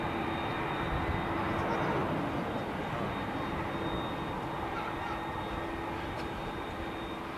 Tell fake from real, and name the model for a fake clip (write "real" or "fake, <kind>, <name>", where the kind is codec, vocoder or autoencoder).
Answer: real